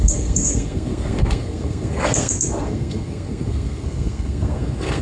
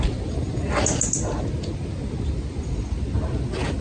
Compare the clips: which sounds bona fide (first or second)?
second